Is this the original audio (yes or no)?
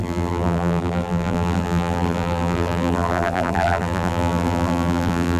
no